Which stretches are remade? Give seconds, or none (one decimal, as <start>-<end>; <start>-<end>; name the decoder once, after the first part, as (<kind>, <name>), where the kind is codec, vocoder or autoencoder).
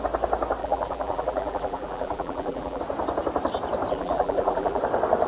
0.6-2.8 (vocoder, BigVGAN v2); 3.9-4.8